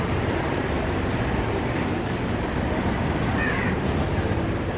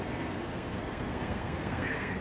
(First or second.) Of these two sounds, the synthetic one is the second